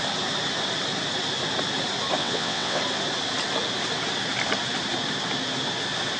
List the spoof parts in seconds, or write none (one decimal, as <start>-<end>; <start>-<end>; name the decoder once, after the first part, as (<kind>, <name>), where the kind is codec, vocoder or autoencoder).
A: 2.2-2.8 (vocoder, WaveNeXt)